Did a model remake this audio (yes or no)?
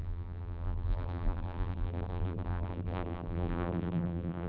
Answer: yes